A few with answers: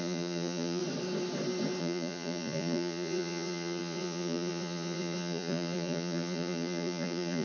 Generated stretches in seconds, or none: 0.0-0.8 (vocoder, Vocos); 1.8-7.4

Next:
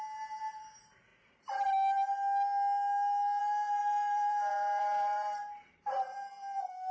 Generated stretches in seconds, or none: 3.8-6.9 (vocoder, BigVGAN v2)